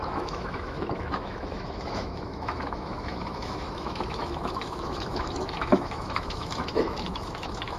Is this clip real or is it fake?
fake